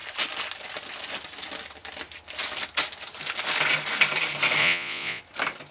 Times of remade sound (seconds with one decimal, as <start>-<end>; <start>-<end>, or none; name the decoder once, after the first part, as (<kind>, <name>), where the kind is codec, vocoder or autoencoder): 4.6-5.2 (vocoder, Vocos)